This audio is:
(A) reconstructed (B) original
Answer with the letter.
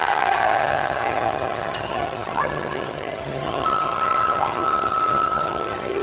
A